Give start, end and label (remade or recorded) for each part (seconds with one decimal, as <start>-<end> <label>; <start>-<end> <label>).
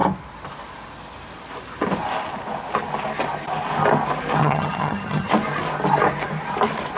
0.0-4.4 recorded; 4.4-5.3 remade; 5.3-7.0 recorded